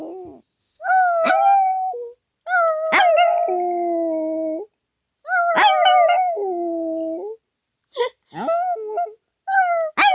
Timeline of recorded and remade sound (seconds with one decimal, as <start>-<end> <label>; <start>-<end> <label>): 0.0-0.6 recorded; 0.6-1.3 remade; 1.3-10.1 recorded

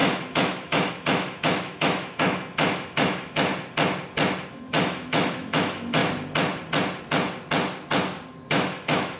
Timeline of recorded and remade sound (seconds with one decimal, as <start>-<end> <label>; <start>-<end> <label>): 0.0-3.5 remade; 3.5-4.5 recorded; 4.5-6.0 remade; 6.0-8.5 recorded; 8.5-9.2 remade

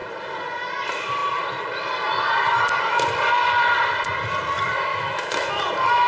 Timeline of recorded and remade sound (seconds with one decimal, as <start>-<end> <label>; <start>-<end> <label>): 0.0-4.9 recorded; 4.9-5.5 remade; 5.5-6.1 recorded